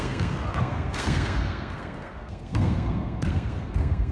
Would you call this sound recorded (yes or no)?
no